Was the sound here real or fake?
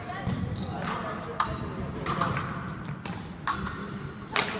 real